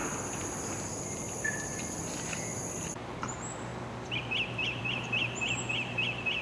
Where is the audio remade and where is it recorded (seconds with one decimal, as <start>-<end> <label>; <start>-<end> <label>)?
0.0-2.7 recorded; 2.7-3.7 remade; 3.7-4.8 recorded; 4.8-6.4 remade